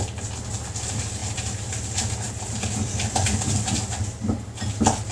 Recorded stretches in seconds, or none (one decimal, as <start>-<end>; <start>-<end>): 0.0-1.2; 4.3-5.1